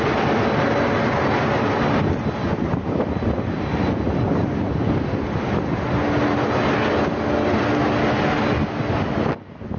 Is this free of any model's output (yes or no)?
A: yes